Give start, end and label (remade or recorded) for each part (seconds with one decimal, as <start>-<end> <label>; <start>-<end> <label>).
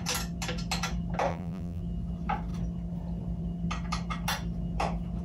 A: 0.0-1.3 recorded; 1.3-1.8 remade; 1.8-5.2 recorded